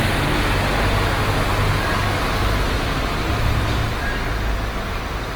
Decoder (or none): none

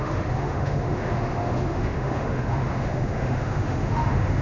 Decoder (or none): autoencoder, DAC-VAE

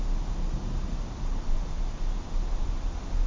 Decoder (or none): none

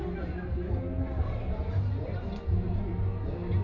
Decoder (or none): none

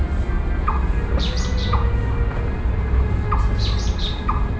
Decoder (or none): none